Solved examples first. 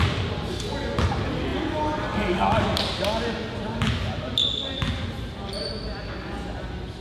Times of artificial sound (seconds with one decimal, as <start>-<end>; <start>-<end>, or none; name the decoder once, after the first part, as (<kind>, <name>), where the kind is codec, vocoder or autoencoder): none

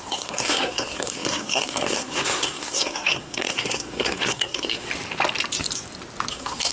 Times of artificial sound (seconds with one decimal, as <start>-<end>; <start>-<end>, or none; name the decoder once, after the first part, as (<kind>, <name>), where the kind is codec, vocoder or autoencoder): 0.0-4.9 (codec, SNAC); 6.3-6.7

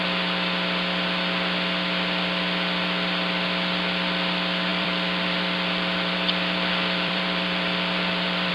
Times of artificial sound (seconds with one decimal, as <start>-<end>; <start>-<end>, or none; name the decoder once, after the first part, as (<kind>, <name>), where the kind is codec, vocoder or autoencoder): 4.7-8.5 (vocoder, BigVGAN v2)